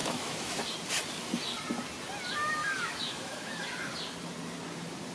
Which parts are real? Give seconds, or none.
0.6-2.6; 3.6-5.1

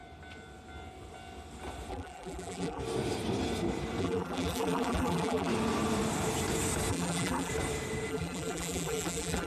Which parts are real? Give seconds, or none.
0.0-1.9; 2.8-4.0; 5.5-6.9; 7.5-8.1